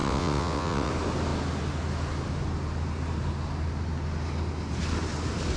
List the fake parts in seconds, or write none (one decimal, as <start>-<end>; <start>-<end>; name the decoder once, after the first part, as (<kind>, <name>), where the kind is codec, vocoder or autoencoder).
0.0-0.9 (vocoder, WaveNeXt)